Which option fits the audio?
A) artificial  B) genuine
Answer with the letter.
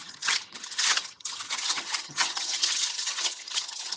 A